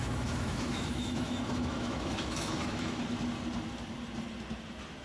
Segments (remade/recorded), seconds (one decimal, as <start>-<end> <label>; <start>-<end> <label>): 0.0-3.0 remade; 3.0-5.0 recorded